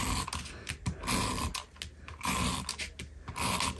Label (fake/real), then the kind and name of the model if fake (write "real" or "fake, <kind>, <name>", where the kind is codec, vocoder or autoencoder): real